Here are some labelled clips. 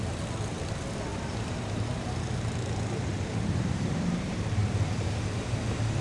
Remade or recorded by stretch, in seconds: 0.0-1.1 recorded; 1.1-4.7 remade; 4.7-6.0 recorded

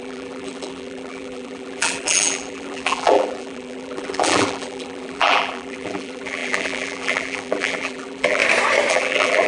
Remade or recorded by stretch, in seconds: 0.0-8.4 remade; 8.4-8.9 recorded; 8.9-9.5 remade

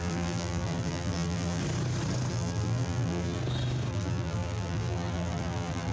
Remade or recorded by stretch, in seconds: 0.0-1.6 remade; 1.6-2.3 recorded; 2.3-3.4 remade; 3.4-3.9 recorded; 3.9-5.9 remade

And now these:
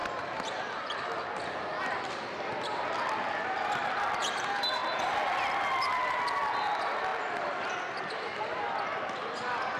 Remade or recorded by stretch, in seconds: 0.0-7.1 recorded; 7.1-8.6 remade; 8.6-9.8 recorded

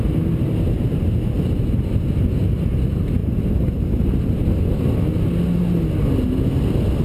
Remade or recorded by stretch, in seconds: 0.0-7.0 recorded

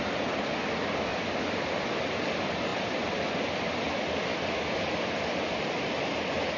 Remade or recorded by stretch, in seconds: 0.0-1.1 recorded; 1.1-1.8 remade; 1.8-2.7 recorded; 2.7-6.0 remade; 6.0-6.6 recorded